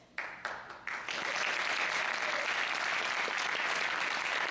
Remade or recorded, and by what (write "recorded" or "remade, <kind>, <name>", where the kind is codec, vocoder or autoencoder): recorded